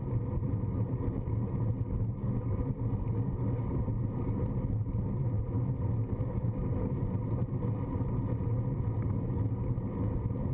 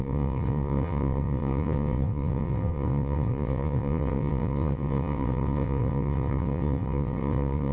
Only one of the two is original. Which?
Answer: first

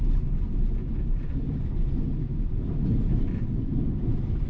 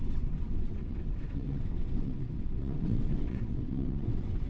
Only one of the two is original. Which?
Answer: first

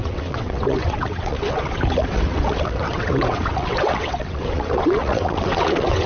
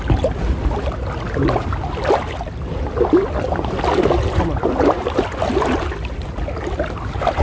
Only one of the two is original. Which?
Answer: second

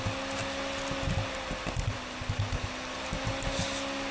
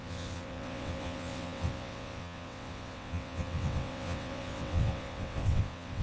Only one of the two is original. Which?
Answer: first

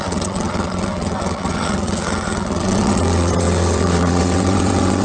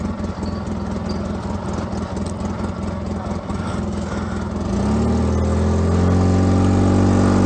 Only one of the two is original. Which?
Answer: second